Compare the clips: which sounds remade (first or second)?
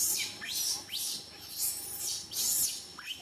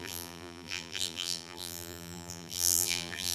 second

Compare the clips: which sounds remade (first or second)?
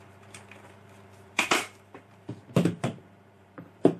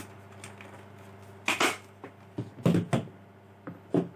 first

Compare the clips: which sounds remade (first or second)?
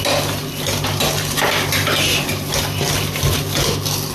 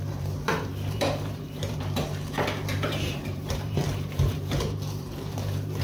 second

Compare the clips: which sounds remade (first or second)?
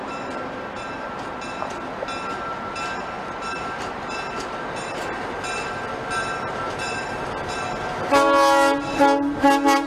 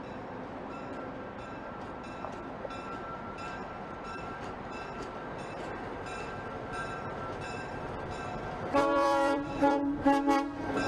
second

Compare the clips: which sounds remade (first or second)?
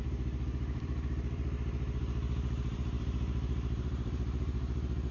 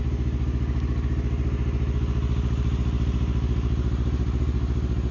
first